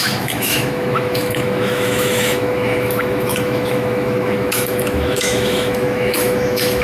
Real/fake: fake